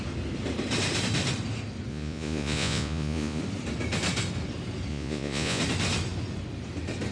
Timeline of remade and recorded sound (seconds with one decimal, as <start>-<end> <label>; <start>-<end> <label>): 0.0-1.9 recorded; 1.9-3.4 remade; 3.4-4.9 recorded; 4.9-5.6 remade; 5.6-7.1 recorded